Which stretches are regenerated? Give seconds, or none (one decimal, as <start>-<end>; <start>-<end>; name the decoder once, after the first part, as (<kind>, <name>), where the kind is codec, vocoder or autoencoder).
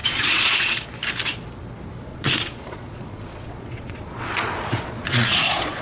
0.0-0.8 (vocoder, Vocos); 2.1-5.8